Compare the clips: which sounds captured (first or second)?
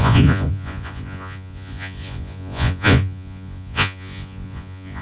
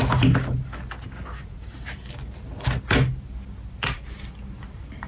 second